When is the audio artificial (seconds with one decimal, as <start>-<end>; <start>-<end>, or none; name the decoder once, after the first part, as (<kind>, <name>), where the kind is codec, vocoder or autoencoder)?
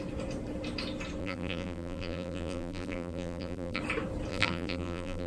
1.2-3.8 (vocoder, BigVGAN v2); 4.3-5.3